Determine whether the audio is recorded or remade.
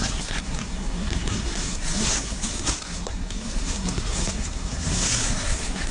remade